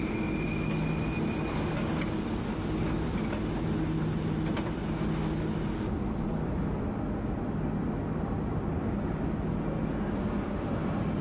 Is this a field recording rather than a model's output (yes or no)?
yes